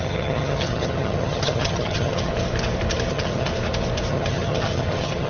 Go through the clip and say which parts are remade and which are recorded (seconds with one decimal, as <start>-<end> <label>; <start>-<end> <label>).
0.0-2.3 remade; 2.3-3.1 recorded; 3.1-3.5 remade; 3.5-4.1 recorded; 4.1-5.3 remade